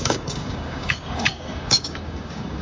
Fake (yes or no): yes